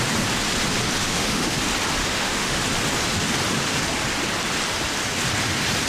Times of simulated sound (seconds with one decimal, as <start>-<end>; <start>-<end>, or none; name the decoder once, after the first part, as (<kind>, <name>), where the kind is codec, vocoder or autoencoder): 1.0-1.6 (autoencoder, DAC-VAE); 2.0-2.6